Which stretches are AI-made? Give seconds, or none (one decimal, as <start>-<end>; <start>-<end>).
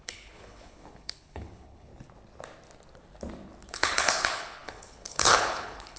0.0-1.9; 3.7-6.0